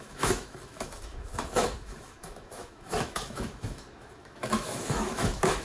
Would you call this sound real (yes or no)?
no